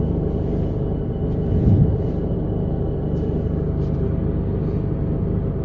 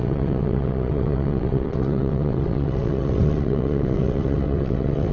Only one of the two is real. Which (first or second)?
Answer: first